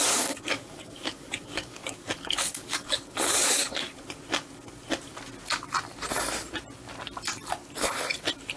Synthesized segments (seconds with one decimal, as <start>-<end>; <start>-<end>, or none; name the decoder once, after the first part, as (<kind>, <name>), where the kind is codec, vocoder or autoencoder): 0.0-3.9 (codec, DAC)